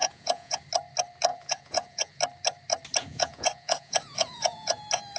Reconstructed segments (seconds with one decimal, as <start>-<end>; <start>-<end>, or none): 0.0-0.6; 1.3-2.2; 3.0-4.8